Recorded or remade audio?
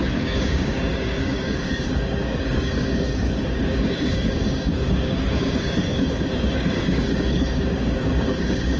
remade